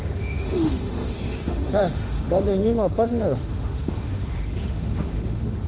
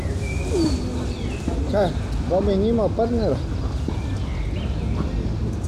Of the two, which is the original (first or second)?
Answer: second